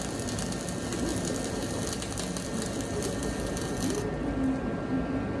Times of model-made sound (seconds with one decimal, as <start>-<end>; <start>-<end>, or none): none